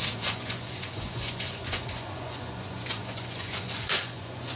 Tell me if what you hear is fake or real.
fake